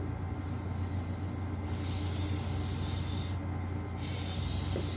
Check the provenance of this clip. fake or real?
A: real